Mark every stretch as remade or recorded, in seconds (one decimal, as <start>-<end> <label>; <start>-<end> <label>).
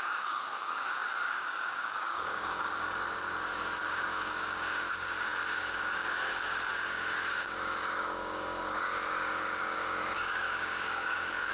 0.0-11.5 remade